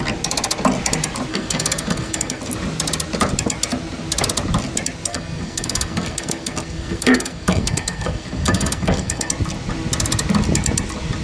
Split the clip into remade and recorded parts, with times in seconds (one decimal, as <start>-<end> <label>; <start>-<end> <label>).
0.0-1.3 recorded; 1.3-2.4 remade; 2.4-5.1 recorded; 5.1-9.3 remade; 9.3-11.2 recorded